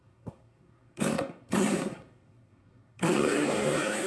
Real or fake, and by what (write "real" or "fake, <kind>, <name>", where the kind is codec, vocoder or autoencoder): fake, codec, SNAC